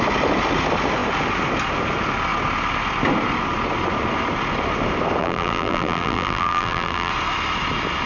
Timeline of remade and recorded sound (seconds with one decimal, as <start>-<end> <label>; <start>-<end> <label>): 0.0-5.2 recorded; 5.2-7.1 remade; 7.1-8.1 recorded